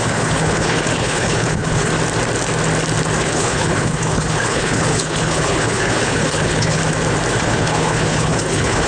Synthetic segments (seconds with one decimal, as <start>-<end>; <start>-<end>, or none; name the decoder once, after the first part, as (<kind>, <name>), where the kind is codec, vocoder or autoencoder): 0.0-1.9 (codec, HILCodec); 3.2-6.8; 7.4-8.9